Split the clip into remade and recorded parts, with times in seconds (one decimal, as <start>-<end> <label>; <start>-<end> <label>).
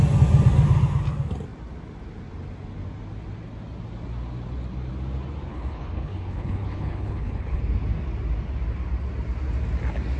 0.0-5.5 recorded; 5.5-7.6 remade; 7.6-10.2 recorded